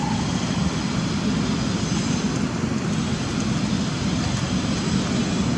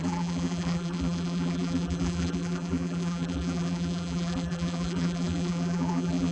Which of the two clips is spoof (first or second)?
second